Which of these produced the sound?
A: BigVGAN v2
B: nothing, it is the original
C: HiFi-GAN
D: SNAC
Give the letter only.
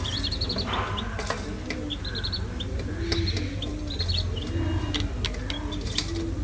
B